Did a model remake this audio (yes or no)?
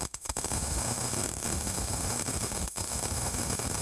yes